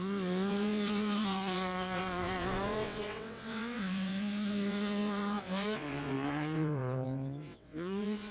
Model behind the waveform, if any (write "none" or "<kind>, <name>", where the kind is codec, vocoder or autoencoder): vocoder, WaveNeXt